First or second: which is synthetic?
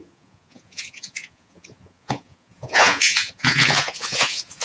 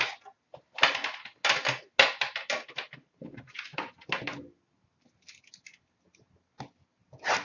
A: first